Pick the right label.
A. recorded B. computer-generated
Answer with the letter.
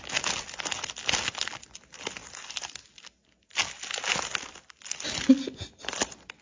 A